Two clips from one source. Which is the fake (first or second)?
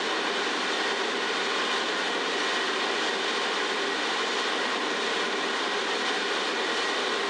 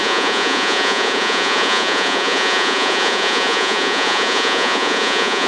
second